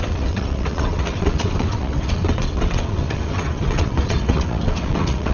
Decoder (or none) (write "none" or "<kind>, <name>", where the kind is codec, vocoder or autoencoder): vocoder, WaveNeXt